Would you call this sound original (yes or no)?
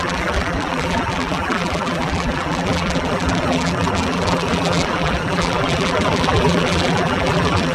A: no